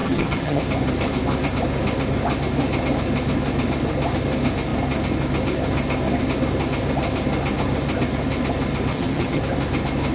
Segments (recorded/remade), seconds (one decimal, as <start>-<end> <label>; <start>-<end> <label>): 0.0-0.6 remade; 0.6-8.9 recorded; 8.9-9.4 remade; 9.4-10.1 recorded